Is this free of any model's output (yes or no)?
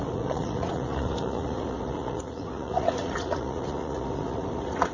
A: no